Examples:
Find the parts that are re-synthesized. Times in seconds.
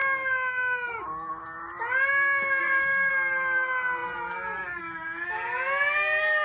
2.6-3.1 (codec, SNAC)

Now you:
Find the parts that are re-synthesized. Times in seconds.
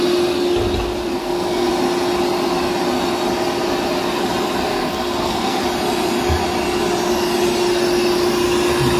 1.2-1.7 (codec, SNAC); 4.7-5.6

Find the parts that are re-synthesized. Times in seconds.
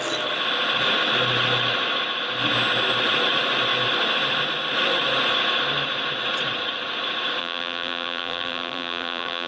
7.4-9.5 (vocoder, BigVGAN v2)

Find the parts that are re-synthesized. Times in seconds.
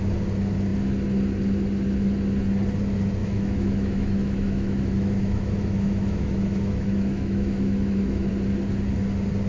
3.2-8.3 (autoencoder, DAC-VAE)